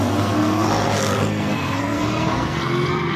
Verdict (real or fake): fake